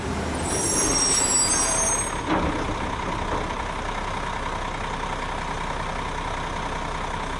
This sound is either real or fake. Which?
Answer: real